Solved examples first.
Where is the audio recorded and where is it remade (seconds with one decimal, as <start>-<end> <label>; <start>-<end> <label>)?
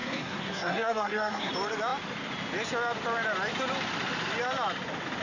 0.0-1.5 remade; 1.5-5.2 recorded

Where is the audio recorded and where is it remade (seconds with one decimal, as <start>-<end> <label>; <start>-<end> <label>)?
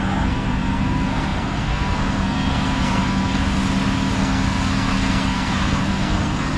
0.0-3.6 remade; 3.6-4.2 recorded; 4.2-6.6 remade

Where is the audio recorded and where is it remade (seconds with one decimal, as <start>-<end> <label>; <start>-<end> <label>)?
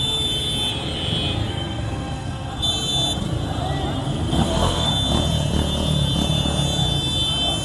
0.0-1.5 recorded; 1.5-2.5 remade; 2.5-4.0 recorded; 4.0-4.9 remade; 4.9-7.6 recorded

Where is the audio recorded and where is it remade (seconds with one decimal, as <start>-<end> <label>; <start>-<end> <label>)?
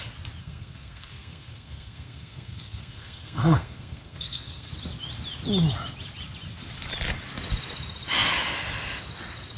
0.0-0.4 recorded; 0.4-4.7 remade; 4.7-9.6 recorded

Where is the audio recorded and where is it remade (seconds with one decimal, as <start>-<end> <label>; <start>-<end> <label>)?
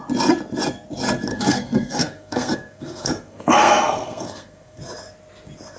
0.0-1.3 recorded; 1.3-4.8 remade; 4.8-5.8 recorded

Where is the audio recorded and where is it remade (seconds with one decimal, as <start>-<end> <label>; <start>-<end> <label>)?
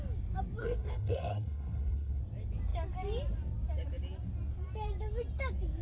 0.0-0.6 recorded; 0.6-2.2 remade; 2.2-5.8 recorded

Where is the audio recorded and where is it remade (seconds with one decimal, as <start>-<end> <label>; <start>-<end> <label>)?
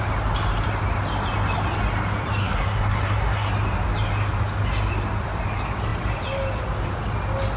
0.0-2.4 recorded; 2.4-3.5 remade; 3.5-7.6 recorded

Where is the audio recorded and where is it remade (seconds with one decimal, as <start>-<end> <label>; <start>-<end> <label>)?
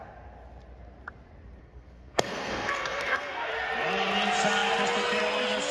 0.0-1.6 recorded; 1.6-3.5 remade; 3.5-5.7 recorded